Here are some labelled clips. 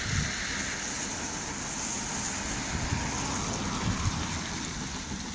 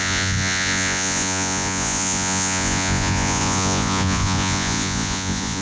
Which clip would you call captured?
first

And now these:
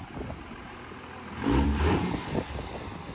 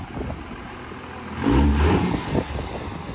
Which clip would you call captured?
second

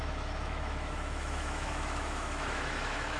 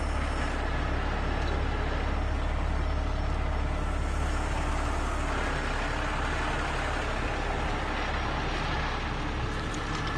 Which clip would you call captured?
second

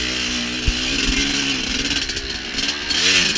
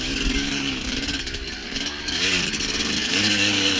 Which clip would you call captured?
first